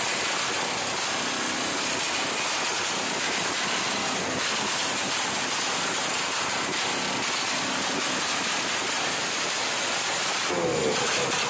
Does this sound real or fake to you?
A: real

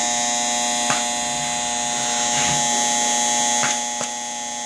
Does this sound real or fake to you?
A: real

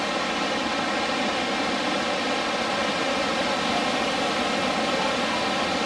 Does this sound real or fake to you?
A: real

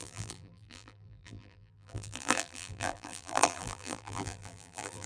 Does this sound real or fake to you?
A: fake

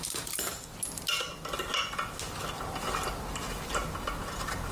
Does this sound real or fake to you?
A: real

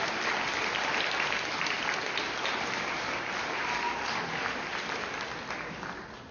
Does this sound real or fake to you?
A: real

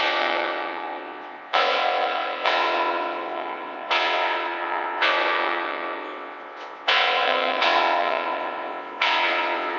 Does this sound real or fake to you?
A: fake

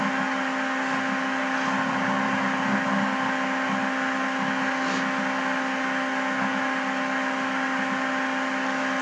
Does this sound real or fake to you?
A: real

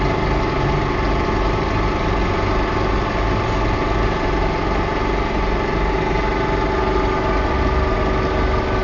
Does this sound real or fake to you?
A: real